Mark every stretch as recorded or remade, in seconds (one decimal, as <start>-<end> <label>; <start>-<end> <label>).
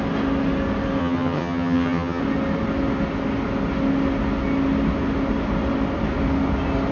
0.0-1.0 recorded; 1.0-2.2 remade; 2.2-6.9 recorded